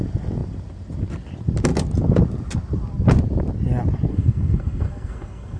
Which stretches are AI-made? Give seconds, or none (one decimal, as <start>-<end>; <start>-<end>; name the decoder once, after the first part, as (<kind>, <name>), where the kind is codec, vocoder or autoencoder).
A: 4.1-5.6 (codec, SNAC)